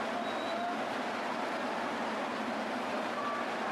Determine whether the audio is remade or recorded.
recorded